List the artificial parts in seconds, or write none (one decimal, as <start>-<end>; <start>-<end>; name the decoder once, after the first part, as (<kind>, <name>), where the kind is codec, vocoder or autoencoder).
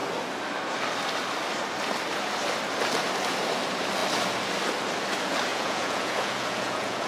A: 5.5-7.1 (vocoder, Vocos)